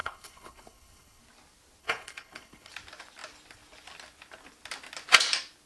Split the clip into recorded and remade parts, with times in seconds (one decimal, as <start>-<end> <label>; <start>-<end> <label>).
0.0-1.2 remade; 1.2-1.8 recorded; 1.8-2.7 remade; 2.7-5.7 recorded